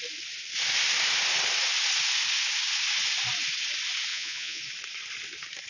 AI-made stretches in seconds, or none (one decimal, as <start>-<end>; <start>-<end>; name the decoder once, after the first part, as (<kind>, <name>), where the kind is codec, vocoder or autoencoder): 4.1-4.6 (vocoder, Vocos)

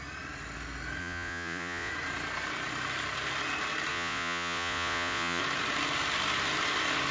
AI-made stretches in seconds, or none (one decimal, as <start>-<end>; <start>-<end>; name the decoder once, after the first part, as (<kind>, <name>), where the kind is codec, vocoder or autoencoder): 1.0-1.9 (vocoder, Vocos); 3.9-5.4

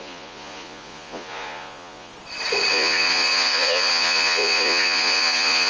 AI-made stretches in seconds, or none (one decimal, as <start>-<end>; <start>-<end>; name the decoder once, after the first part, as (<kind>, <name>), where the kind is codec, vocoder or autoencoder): 0.0-2.1 (vocoder, Vocos); 2.7-5.7

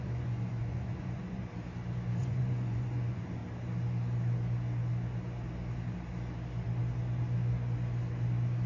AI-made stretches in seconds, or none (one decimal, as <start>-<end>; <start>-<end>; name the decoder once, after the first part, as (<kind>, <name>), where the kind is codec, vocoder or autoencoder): 0.0-1.4 (vocoder, Vocos); 2.2-3.4

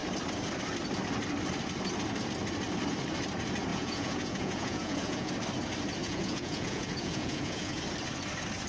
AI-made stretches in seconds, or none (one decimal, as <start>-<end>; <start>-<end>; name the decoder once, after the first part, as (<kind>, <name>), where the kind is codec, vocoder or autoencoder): 3.7-5.3 (vocoder, Vocos); 6.0-7.8

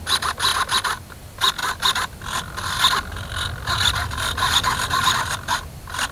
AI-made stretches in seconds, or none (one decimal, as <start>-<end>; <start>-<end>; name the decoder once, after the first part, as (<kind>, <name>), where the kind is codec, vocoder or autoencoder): none